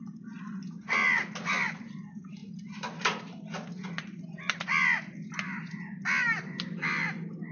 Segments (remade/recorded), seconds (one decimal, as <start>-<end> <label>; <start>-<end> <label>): 0.0-7.5 recorded